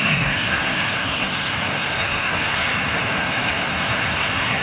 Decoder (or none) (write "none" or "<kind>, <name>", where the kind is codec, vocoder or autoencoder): codec, SNAC